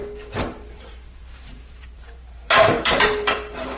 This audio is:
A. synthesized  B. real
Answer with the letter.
A